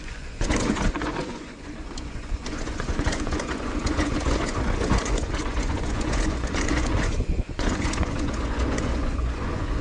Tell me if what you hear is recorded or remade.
remade